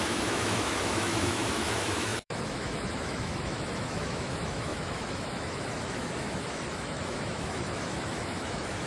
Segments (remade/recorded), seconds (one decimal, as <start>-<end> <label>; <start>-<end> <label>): 0.0-8.9 remade